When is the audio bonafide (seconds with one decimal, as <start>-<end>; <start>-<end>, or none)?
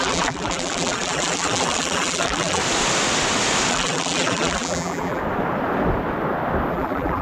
2.6-3.7; 5.2-6.7